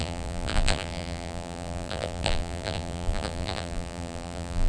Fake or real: fake